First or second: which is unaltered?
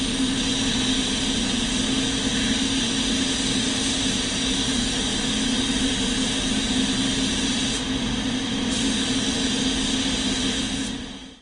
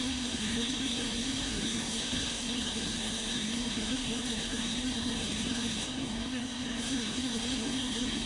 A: first